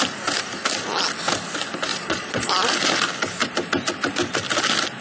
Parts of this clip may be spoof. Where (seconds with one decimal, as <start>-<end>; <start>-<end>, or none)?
1.9-2.5